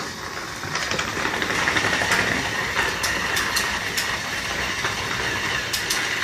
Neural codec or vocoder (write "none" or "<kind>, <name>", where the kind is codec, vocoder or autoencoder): none